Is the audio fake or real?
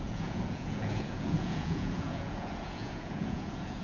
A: fake